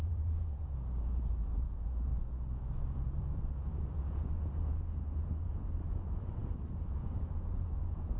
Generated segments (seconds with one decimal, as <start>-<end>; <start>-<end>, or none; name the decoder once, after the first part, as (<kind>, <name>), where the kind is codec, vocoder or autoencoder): 0.0-6.4 (vocoder, Vocos); 6.9-8.2